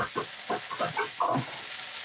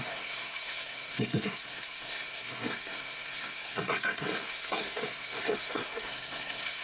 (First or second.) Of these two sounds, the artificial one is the second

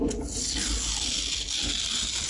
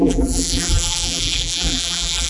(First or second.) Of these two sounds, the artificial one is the second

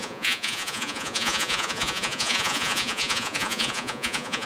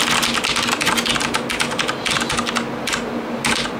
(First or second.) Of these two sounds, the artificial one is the first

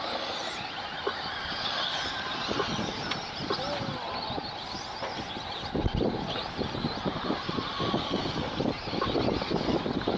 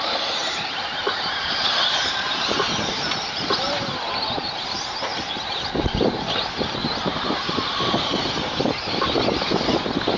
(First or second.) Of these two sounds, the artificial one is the second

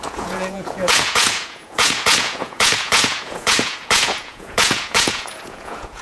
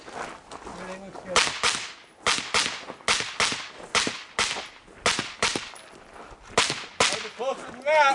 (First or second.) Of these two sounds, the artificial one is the first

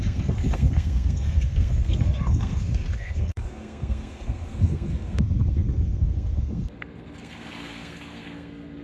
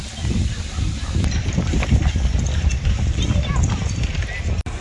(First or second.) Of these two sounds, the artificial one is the first